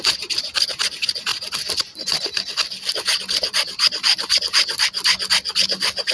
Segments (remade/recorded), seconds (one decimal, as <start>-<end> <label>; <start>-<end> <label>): 0.0-1.3 recorded; 1.3-3.2 remade; 3.2-6.1 recorded